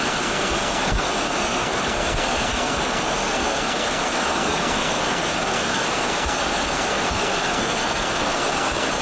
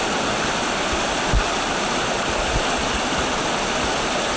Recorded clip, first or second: second